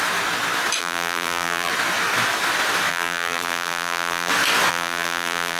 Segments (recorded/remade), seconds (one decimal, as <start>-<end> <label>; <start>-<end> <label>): 0.0-0.8 recorded; 0.8-1.7 remade; 1.7-2.9 recorded; 2.9-4.3 remade; 4.3-4.7 recorded; 4.7-5.6 remade